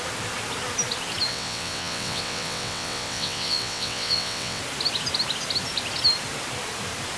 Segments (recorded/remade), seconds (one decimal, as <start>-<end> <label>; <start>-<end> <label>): 0.0-1.3 recorded; 1.3-4.6 remade; 4.6-7.2 recorded